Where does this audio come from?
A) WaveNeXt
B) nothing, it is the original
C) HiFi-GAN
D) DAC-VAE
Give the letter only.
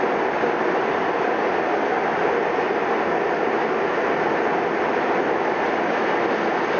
B